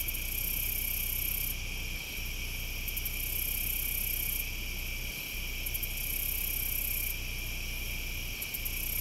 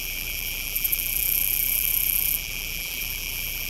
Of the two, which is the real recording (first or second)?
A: first